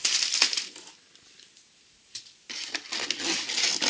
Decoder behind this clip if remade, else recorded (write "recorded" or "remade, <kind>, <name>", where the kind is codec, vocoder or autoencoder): recorded